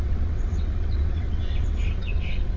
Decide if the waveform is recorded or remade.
remade